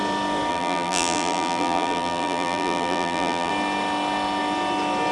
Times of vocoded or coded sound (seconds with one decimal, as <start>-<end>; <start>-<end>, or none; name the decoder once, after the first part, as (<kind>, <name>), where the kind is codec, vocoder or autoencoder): 0.5-3.5 (vocoder, BigVGAN v2)